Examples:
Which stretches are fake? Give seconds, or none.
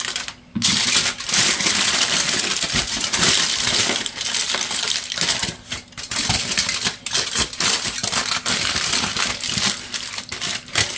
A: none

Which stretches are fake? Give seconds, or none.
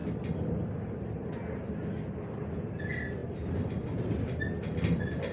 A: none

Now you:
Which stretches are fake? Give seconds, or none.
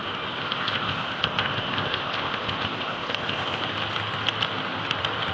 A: 0.4-3.6 (codec, ZipCodec)